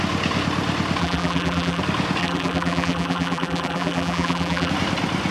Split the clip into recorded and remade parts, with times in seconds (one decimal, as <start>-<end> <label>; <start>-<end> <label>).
0.0-1.0 recorded; 1.0-1.8 remade; 1.8-2.2 recorded; 2.2-4.7 remade; 4.7-5.3 recorded